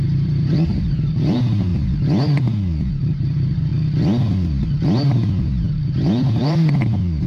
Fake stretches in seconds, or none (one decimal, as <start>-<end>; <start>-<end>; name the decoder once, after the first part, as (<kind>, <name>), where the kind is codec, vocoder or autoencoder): 0.0-1.7 (vocoder, BigVGAN v2); 2.9-3.7; 5.1-7.3